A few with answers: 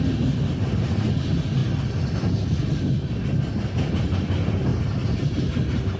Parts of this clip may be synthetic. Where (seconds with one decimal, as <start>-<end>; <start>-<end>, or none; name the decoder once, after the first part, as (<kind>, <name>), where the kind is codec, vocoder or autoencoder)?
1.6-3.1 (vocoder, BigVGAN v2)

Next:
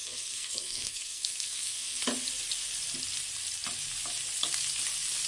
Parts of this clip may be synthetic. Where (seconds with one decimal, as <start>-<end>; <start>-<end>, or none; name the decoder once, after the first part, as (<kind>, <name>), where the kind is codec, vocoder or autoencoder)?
0.0-2.0 (codec, SNAC)

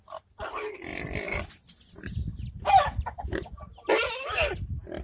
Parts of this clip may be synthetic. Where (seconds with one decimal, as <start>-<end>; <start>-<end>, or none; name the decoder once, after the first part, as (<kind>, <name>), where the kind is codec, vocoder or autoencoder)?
0.9-3.9 (vocoder, BigVGAN v2)

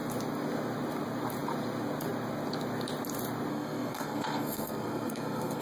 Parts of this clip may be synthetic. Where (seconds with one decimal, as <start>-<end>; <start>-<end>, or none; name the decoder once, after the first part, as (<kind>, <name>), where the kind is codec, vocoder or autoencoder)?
3.5-5.6 (codec, SNAC)

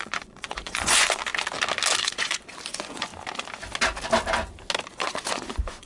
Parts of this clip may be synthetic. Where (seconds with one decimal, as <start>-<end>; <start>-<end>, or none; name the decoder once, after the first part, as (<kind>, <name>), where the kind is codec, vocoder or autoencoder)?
0.0-1.3 (vocoder, Vocos); 2.0-3.1; 4.9-5.9

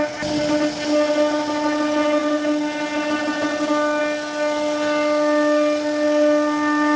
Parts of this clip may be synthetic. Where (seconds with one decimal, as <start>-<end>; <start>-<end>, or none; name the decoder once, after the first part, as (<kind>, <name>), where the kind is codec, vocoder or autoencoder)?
none

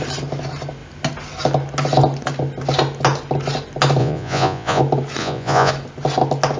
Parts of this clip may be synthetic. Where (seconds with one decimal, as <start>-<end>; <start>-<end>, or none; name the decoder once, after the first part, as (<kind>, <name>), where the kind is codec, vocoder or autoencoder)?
4.0-4.8 (vocoder, Vocos); 5.2-5.7

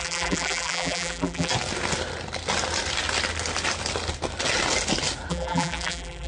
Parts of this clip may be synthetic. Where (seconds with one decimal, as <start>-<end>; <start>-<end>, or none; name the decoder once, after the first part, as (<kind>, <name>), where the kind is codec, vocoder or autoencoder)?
0.0-1.5 (vocoder, BigVGAN v2); 5.3-6.3